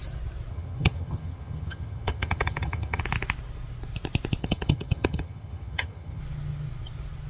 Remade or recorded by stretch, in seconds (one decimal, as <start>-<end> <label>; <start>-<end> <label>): 0.0-0.5 recorded; 0.5-3.0 remade; 3.0-4.4 recorded; 4.4-6.2 remade; 6.2-7.3 recorded